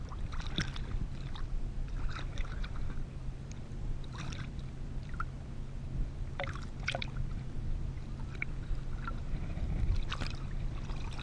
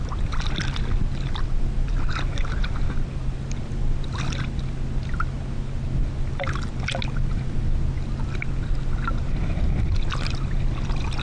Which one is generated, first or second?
first